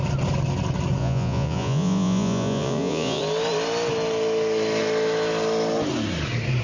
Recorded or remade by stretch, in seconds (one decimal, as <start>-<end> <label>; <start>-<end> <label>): 0.0-1.0 recorded; 1.0-3.2 remade; 3.2-6.6 recorded